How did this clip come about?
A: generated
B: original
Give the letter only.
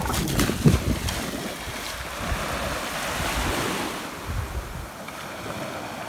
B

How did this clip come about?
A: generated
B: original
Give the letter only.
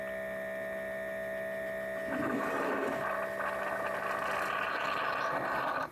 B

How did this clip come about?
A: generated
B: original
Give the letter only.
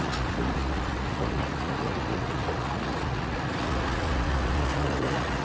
A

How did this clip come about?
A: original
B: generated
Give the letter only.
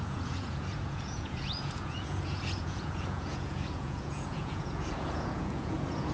B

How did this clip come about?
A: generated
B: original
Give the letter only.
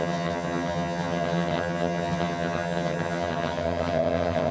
A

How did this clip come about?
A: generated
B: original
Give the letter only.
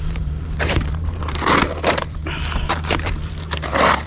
A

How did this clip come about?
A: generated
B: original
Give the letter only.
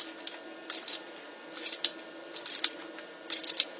B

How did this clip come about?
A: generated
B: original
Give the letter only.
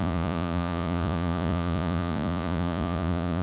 A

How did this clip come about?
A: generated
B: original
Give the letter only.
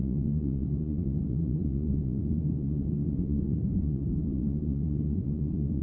A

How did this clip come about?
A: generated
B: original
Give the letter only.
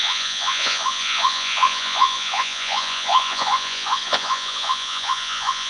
A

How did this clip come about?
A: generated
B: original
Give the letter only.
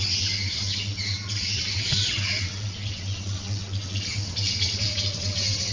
A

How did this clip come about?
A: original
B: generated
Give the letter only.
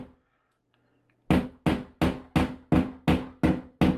A